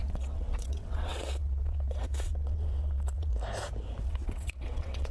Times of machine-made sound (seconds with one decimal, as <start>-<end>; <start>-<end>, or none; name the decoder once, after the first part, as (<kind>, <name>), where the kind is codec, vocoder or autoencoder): 0.0-3.3 (vocoder, WaveNeXt); 4.0-5.1